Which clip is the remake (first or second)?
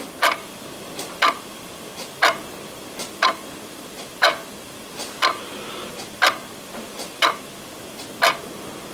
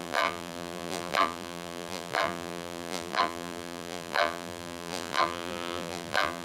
second